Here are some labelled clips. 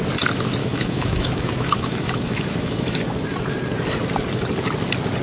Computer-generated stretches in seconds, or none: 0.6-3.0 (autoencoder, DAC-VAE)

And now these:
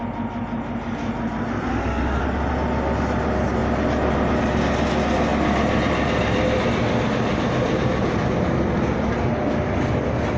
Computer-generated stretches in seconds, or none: 1.7-2.2 (autoencoder, DAC-VAE)

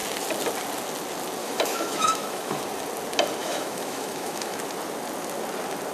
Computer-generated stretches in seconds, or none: 1.4-2.6 (autoencoder, DAC-VAE); 3.4-4.6

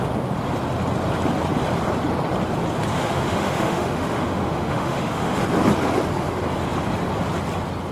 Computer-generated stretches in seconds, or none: 2.9-5.4 (autoencoder, DAC-VAE)

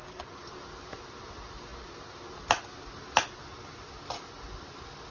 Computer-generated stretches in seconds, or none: none

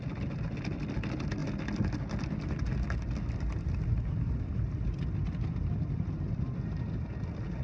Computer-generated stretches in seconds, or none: none

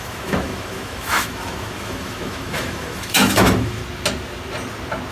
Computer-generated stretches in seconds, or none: 0.0-3.8 (autoencoder, DAC-VAE)